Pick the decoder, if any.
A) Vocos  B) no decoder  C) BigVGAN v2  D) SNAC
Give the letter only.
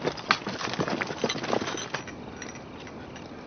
B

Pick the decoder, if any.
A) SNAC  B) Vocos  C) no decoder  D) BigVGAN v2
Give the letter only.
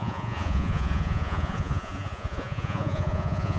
B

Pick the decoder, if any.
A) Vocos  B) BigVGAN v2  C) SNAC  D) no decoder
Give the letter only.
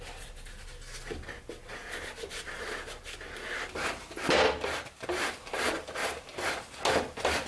D